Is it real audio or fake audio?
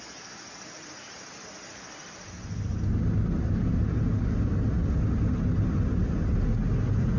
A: real